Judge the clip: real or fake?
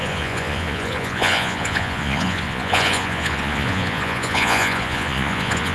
fake